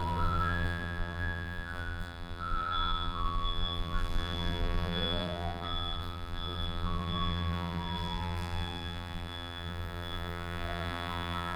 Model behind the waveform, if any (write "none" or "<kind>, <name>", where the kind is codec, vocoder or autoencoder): vocoder, BigVGAN v2